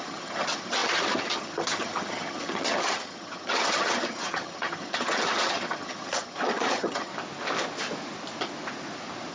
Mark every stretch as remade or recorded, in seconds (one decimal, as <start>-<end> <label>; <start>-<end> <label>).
0.0-7.1 remade; 7.1-9.3 recorded